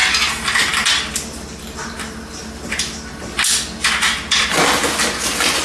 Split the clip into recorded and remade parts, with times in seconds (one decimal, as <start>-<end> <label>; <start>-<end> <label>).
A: 0.0-5.6 recorded